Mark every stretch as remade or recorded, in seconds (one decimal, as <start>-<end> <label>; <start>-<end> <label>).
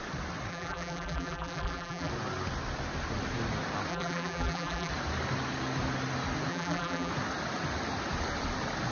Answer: 0.0-0.5 recorded; 0.5-2.1 remade; 2.1-3.9 recorded; 3.9-4.9 remade; 4.9-6.5 recorded; 6.5-7.1 remade; 7.1-8.9 recorded